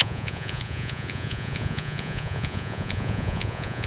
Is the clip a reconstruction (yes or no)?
yes